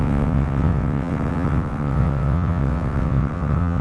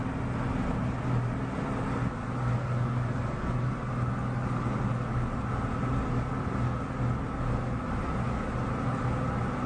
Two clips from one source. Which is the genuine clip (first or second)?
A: second